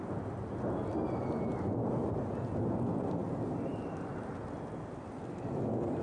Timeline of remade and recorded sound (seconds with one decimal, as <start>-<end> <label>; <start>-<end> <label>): 0.0-1.5 recorded; 1.5-2.1 remade; 2.1-3.2 recorded; 3.2-3.8 remade; 3.8-6.0 recorded